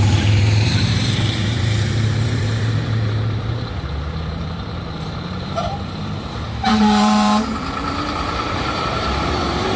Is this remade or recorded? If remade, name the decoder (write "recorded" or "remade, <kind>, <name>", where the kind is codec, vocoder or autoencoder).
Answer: remade, vocoder, BigVGAN v2